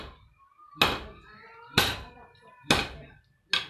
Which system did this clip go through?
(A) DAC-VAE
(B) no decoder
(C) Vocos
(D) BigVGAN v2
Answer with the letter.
B